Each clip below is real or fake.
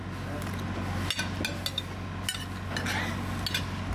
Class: real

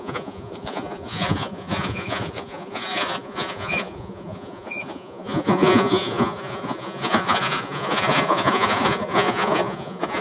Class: fake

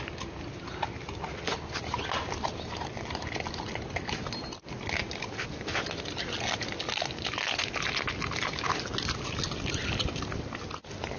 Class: real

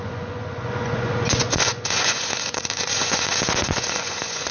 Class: fake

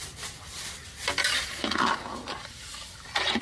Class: real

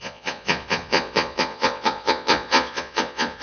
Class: fake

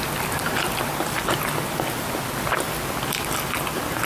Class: real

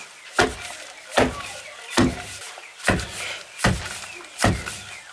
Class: real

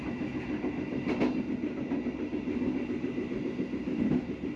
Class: real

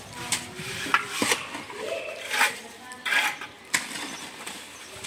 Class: real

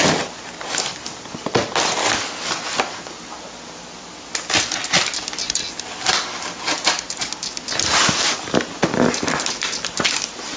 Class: real